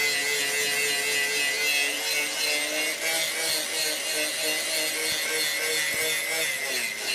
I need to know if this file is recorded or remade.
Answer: recorded